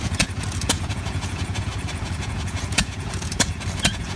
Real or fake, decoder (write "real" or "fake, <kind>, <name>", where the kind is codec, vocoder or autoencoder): fake, vocoder, Vocos